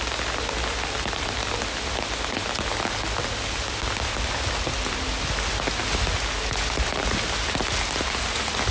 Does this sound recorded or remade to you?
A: recorded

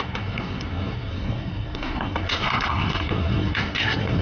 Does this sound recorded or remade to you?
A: remade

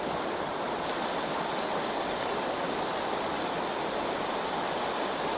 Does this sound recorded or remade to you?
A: recorded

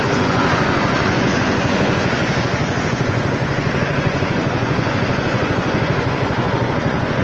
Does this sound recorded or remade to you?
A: remade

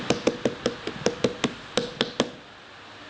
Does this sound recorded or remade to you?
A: recorded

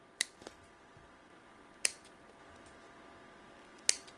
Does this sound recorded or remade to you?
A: recorded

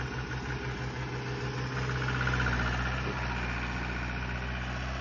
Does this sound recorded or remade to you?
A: recorded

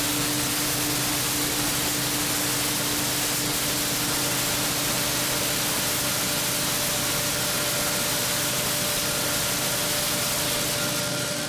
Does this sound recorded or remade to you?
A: recorded